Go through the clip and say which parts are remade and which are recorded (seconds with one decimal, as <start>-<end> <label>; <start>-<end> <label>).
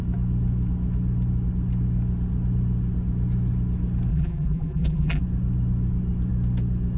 0.0-4.1 recorded; 4.1-5.2 remade; 5.2-7.0 recorded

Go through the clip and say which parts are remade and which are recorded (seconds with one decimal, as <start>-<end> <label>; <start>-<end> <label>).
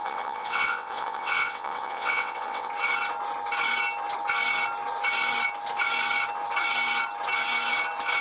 0.0-2.7 remade; 2.7-8.2 recorded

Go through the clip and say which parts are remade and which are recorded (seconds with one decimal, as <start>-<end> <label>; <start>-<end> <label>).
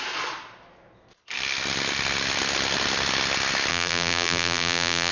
0.0-3.7 recorded; 3.7-5.1 remade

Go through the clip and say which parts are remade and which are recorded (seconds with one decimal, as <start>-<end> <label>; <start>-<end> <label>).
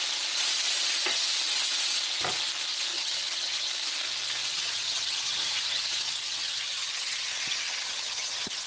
0.0-2.9 recorded; 2.9-3.7 remade; 3.7-4.5 recorded; 4.5-8.7 remade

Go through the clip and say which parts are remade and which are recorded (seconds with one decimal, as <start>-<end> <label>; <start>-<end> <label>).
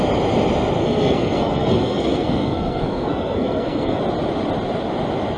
0.0-0.8 recorded; 0.8-4.0 remade; 4.0-5.4 recorded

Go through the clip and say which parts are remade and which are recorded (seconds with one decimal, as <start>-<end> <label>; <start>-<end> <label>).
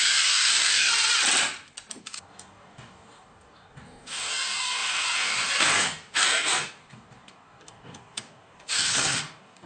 0.0-0.9 remade; 0.9-2.0 recorded; 2.0-9.7 remade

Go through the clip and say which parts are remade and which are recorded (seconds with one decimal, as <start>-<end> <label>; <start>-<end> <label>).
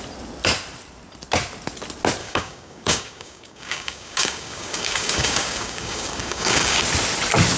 0.0-2.2 recorded; 2.2-6.8 remade; 6.8-7.6 recorded